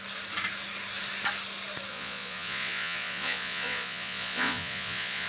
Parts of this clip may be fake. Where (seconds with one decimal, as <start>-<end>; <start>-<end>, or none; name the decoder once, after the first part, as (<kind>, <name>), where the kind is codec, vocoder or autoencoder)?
1.9-5.3 (vocoder, Vocos)

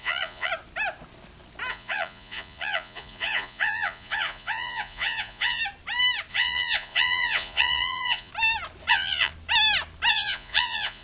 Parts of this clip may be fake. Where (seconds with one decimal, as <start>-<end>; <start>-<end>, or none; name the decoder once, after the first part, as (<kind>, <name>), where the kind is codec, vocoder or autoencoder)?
0.0-0.5 (vocoder, Vocos); 1.7-5.6; 6.3-8.3; 8.9-9.3; 10.1-11.0

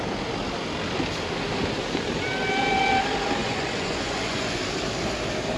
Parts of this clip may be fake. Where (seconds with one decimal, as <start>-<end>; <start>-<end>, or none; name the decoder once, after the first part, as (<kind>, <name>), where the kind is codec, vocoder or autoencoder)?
3.4-4.6 (vocoder, Vocos)

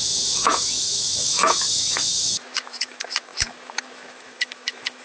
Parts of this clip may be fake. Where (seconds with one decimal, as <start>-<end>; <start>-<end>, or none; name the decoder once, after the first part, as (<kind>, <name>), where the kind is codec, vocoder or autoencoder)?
0.0-5.0 (autoencoder, DAC-VAE)

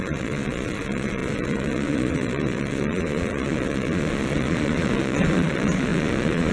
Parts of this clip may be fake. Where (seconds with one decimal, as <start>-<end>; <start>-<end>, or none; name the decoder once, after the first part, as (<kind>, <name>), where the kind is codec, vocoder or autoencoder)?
0.0-6.5 (vocoder, Vocos)

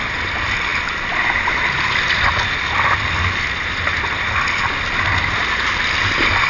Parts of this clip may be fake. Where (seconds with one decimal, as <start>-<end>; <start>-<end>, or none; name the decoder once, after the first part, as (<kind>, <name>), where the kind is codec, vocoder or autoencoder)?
none

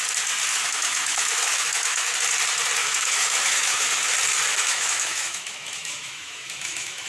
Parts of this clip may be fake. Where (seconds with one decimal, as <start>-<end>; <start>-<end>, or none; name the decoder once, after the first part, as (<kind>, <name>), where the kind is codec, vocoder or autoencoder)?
0.5-2.1 (autoencoder, DAC-VAE); 2.8-3.9; 4.5-7.1

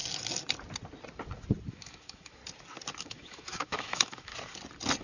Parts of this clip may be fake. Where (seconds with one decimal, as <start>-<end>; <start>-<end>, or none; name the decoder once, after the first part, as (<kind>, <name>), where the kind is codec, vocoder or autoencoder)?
1.7-2.4 (autoencoder, DAC-VAE); 3.0-4.3